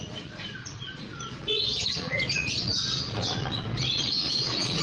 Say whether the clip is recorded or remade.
remade